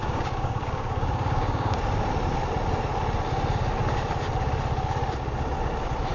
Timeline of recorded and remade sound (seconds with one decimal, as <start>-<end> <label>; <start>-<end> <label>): 0.0-1.8 remade; 1.8-6.1 recorded